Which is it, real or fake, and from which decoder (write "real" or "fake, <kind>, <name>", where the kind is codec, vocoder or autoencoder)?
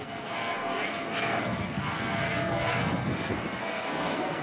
fake, codec, SNAC